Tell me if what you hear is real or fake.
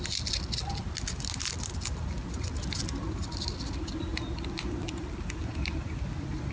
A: real